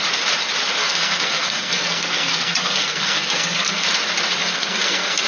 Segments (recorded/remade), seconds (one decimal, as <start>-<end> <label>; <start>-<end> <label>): 0.0-0.8 recorded; 0.8-3.9 remade; 3.9-4.4 recorded; 4.4-5.3 remade